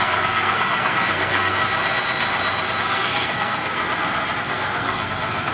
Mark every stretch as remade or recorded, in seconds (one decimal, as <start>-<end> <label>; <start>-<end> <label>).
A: 0.0-1.6 remade; 1.6-2.8 recorded; 2.8-3.8 remade; 3.8-4.4 recorded; 4.4-5.5 remade